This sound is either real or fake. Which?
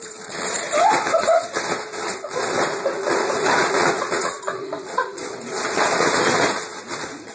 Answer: fake